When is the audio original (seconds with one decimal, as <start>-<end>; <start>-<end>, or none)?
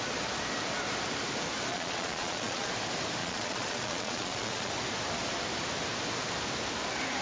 0.0-1.7; 2.7-3.2; 4.7-7.2